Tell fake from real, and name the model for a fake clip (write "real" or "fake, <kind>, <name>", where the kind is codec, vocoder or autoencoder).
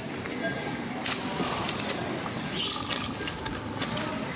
real